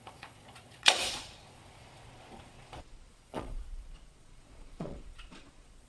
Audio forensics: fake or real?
fake